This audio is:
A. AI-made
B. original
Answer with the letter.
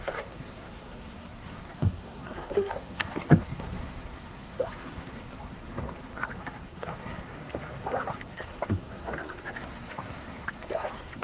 A